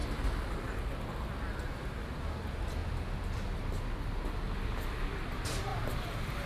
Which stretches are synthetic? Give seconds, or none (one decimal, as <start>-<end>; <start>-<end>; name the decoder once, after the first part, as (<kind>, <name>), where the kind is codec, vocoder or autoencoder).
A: 5.7-6.5 (vocoder, BigVGAN v2)

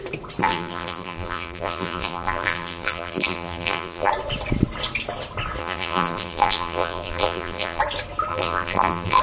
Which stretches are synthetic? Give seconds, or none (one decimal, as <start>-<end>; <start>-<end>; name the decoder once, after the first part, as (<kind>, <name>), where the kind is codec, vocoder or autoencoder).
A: 0.4-4.1 (vocoder, BigVGAN v2); 5.6-7.8; 8.3-9.2

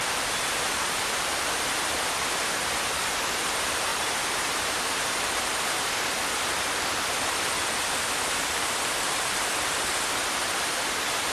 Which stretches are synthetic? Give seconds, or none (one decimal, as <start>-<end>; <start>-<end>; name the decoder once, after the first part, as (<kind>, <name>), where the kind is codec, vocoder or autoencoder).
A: 0.0-11.3 (vocoder, BigVGAN v2)

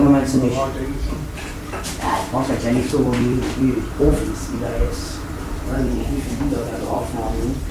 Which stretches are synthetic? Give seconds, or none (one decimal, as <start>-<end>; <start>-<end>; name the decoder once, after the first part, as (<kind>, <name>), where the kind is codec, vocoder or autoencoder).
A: 0.0-0.6 (vocoder, BigVGAN v2); 1.5-7.7

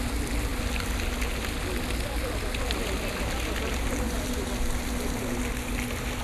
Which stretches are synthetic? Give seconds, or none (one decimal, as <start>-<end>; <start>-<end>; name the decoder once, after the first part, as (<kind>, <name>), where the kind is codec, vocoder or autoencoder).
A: none

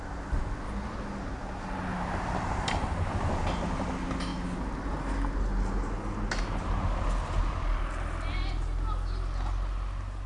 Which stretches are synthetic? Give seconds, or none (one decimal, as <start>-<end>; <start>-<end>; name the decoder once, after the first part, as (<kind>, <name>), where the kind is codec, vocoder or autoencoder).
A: 1.9-3.3 (vocoder, BigVGAN v2)

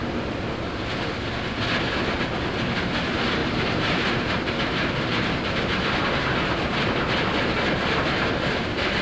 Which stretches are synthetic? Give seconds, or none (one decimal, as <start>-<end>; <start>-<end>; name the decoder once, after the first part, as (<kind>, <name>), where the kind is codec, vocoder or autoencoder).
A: 3.4-4.3 (vocoder, BigVGAN v2)

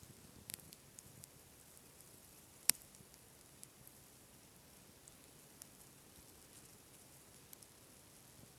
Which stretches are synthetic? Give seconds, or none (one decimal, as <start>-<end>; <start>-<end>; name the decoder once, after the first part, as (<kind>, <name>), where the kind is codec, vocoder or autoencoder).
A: 0.5-4.6 (vocoder, BigVGAN v2); 5.0-6.1; 6.7-7.4